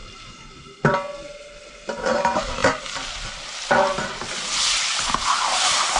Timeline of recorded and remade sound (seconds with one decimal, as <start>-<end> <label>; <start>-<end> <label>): 0.0-6.0 recorded